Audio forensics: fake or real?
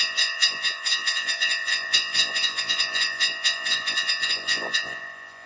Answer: fake